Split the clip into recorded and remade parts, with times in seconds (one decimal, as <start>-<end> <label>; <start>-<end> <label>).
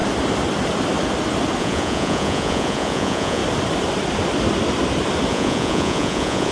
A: 0.0-1.6 recorded; 1.6-3.4 remade; 3.4-5.3 recorded; 5.3-6.5 remade